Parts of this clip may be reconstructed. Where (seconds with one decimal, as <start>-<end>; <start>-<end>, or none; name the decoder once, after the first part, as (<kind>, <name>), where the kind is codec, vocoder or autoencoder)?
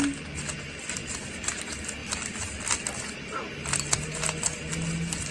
none